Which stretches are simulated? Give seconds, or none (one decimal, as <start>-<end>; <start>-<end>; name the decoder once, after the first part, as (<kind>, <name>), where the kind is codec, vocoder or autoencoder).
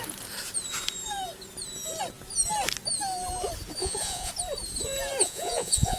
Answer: 3.8-4.3 (vocoder, Vocos); 5.2-6.0